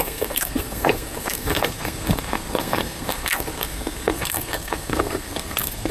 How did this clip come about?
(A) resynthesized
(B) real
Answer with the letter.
A